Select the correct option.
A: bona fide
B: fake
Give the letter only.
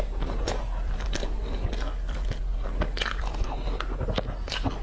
A